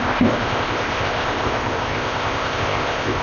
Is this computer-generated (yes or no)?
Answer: yes